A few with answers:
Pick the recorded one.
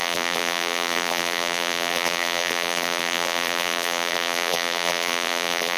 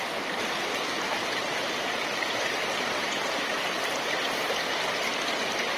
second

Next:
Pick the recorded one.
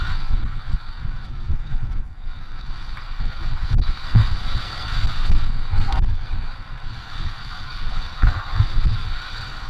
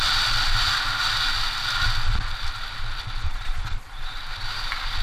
second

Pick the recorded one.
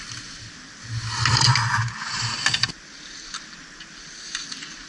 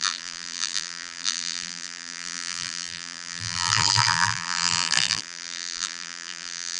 first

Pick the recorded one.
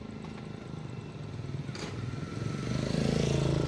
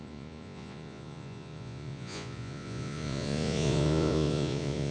first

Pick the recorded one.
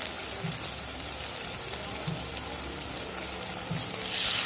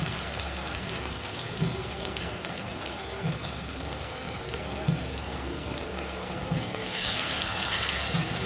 first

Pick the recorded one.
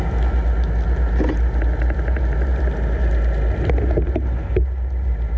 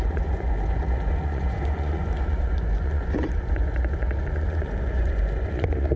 first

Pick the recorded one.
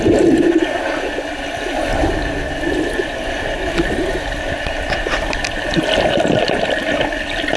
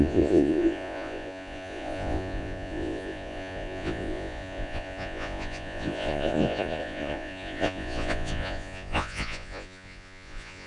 first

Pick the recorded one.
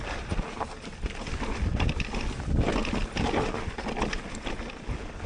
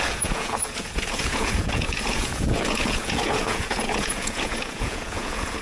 first